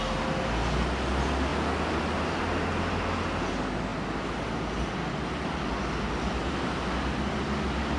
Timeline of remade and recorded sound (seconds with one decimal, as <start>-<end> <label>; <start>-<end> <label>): 0.0-8.0 recorded